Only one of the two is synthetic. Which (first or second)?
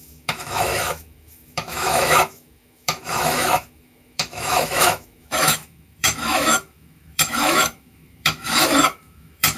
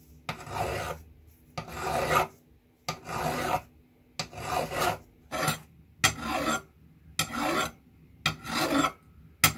first